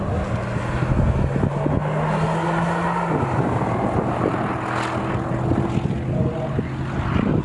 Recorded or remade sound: recorded